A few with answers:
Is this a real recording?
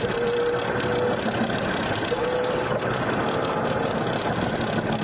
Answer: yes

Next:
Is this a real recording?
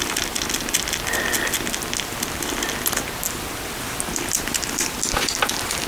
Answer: yes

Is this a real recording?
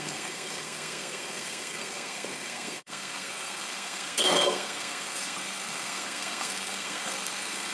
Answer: no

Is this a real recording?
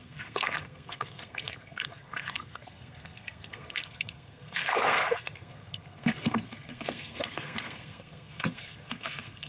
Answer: no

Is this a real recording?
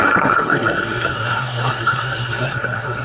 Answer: no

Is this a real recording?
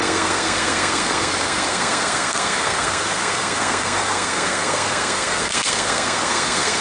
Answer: no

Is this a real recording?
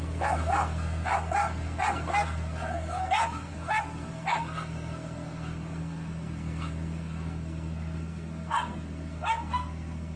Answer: no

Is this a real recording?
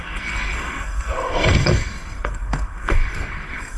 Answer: no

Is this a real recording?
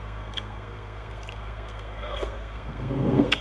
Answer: no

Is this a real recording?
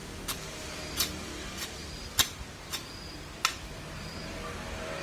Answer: yes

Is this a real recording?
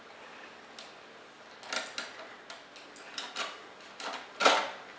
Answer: yes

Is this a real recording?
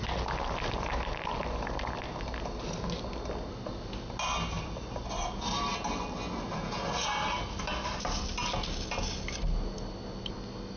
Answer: yes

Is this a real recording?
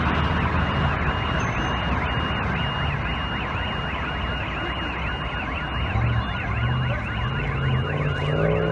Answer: yes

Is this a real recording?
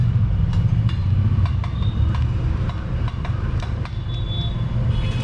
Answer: yes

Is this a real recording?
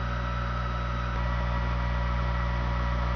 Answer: yes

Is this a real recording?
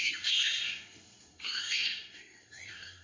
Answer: no